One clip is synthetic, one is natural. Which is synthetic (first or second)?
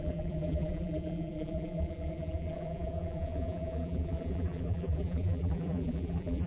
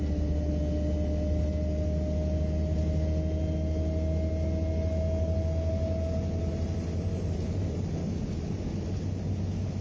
first